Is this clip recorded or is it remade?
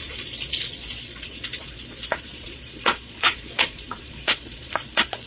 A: remade